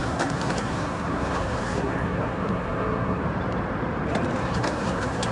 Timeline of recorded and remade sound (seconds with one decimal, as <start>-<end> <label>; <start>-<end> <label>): 0.0-3.2 remade; 3.2-4.4 recorded; 4.4-5.3 remade

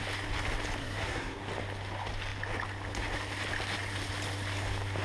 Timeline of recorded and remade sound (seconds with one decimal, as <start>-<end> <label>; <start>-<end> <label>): 0.0-0.8 recorded; 0.8-1.4 remade; 1.4-5.0 recorded

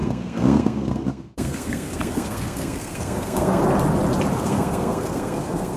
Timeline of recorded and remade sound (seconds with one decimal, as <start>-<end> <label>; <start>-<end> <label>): 0.0-3.6 remade; 3.6-4.3 recorded; 4.3-5.8 remade